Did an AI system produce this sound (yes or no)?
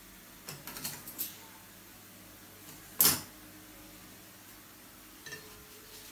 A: no